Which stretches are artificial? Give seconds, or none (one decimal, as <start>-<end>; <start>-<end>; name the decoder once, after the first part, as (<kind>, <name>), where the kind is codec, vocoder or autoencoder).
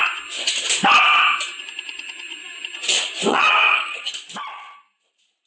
3.3-4.1 (vocoder, HiFi-GAN)